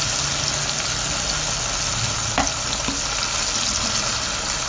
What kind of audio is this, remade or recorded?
recorded